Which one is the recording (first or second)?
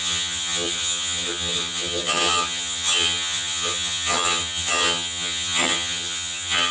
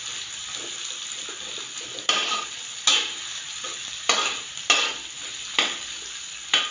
second